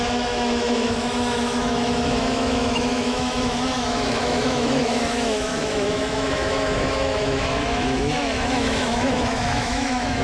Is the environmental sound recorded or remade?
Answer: remade